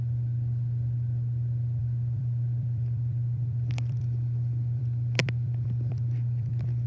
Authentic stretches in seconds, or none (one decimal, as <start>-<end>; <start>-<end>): 0.0-1.8; 4.8-5.2